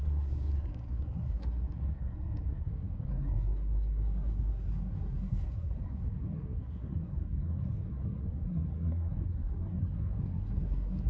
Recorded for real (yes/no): no